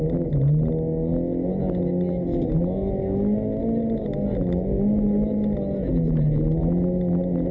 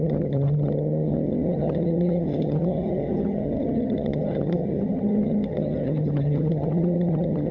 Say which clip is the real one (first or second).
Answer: first